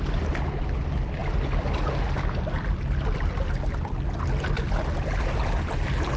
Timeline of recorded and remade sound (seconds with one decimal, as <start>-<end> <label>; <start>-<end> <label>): 0.0-6.2 recorded